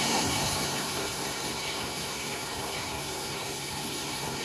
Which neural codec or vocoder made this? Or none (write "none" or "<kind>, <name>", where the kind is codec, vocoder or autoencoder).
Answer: codec, SNAC